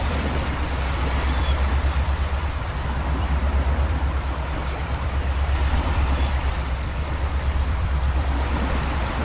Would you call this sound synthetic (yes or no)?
yes